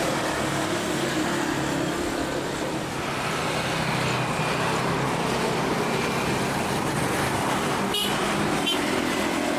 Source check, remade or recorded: recorded